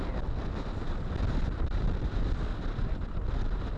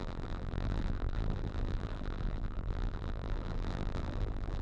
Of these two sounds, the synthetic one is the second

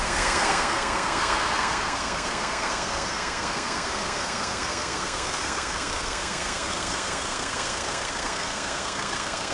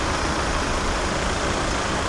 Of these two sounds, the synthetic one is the first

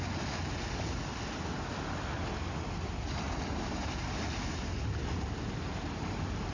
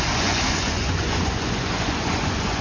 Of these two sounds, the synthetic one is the second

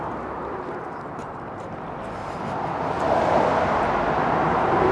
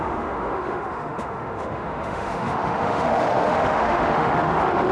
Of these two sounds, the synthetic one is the second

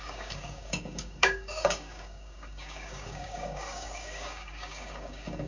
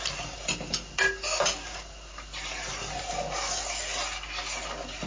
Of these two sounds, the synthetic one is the first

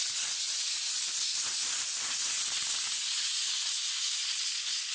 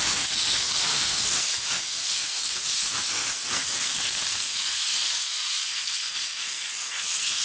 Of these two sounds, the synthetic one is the second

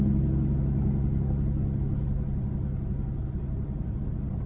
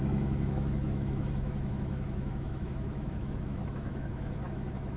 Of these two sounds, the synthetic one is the second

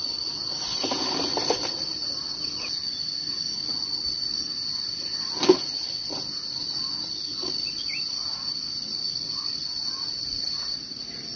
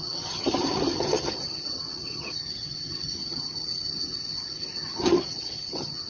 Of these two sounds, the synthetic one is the second